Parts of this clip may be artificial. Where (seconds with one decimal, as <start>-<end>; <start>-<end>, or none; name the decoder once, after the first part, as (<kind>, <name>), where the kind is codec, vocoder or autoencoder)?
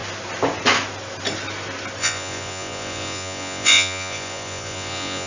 2.0-5.3 (vocoder, Vocos)